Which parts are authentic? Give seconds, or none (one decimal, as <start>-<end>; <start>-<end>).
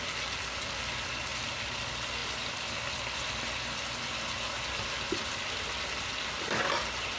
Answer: 0.0-7.2